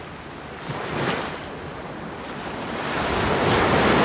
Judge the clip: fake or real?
real